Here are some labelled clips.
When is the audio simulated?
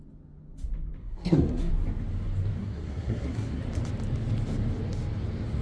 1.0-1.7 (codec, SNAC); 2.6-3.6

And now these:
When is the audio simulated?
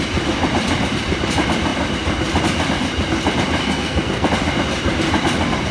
3.6-4.3 (codec, SNAC)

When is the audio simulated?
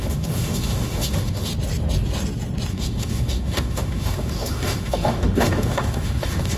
0.0-1.5 (autoencoder, DAC-VAE); 2.7-6.6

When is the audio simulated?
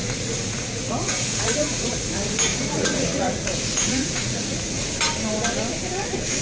0.0-2.1 (vocoder, Vocos); 2.5-4.9